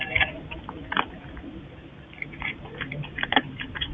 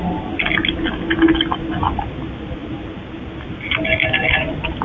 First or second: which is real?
second